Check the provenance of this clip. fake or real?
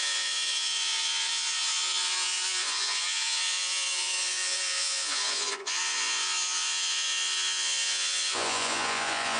fake